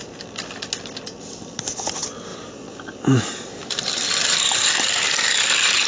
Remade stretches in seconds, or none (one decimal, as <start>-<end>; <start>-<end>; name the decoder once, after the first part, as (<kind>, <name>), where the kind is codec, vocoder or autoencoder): 2.3-5.9 (vocoder, BigVGAN v2)